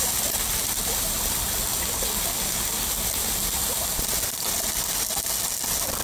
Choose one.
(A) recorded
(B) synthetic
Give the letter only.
A